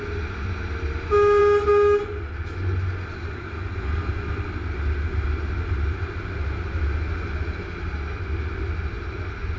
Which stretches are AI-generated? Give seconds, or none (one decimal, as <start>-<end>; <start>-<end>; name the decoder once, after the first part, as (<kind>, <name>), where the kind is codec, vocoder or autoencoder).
none